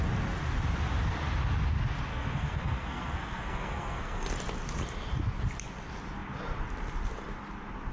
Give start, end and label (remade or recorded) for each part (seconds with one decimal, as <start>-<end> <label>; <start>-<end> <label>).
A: 0.0-2.1 recorded; 2.1-4.3 remade; 4.3-7.9 recorded